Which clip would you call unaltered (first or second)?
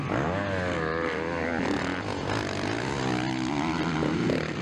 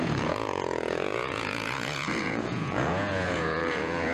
first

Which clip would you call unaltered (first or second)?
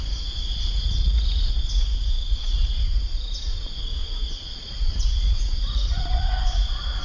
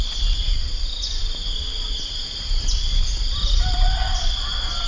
second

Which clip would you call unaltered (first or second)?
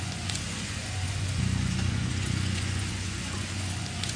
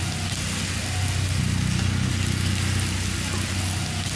second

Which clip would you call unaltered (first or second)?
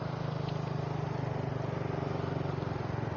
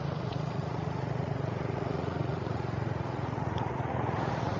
first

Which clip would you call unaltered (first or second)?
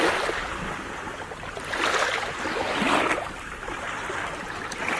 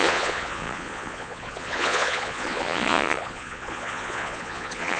first